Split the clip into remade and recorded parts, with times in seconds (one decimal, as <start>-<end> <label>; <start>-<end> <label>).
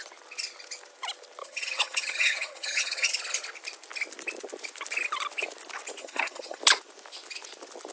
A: 0.0-1.4 recorded; 1.4-3.1 remade; 3.1-6.0 recorded; 6.0-6.6 remade; 6.6-7.9 recorded